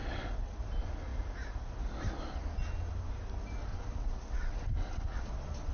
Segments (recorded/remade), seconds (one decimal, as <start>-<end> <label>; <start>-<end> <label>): 0.0-0.6 remade; 0.6-3.7 recorded; 3.7-5.3 remade; 5.3-5.7 recorded